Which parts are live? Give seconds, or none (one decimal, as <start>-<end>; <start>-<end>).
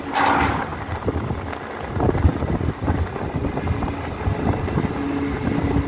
0.0-5.9